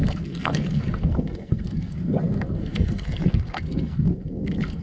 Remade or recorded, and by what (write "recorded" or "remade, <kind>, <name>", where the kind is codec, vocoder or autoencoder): remade, codec, SNAC